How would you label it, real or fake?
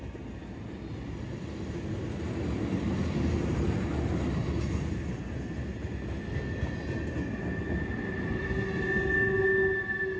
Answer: real